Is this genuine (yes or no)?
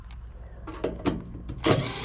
yes